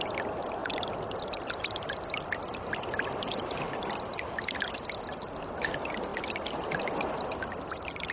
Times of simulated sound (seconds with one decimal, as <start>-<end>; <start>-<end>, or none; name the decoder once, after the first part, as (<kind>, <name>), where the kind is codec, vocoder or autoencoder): none